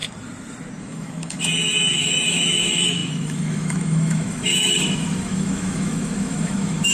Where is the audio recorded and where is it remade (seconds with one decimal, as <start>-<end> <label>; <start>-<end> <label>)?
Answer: 0.0-0.8 recorded; 0.8-6.9 remade